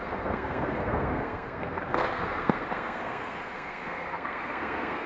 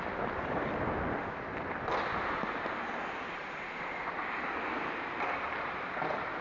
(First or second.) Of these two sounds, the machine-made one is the first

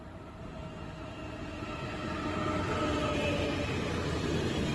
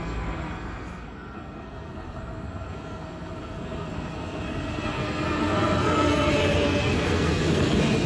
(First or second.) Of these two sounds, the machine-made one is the second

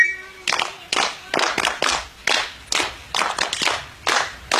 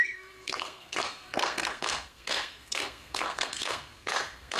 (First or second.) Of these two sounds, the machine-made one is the second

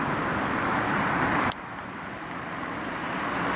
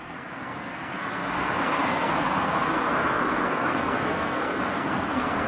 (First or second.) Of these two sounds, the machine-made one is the second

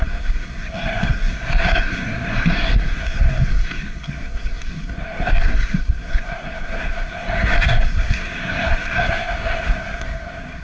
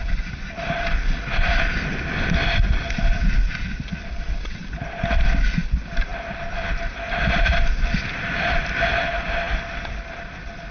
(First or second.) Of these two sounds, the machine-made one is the first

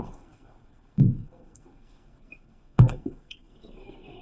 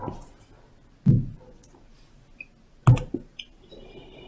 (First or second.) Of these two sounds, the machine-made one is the first